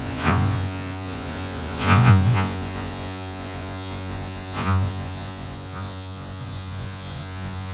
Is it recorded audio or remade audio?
remade